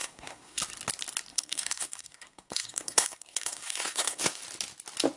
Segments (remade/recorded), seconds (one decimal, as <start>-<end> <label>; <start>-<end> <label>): 0.0-0.6 remade; 0.6-1.3 recorded; 1.3-4.4 remade; 4.4-5.2 recorded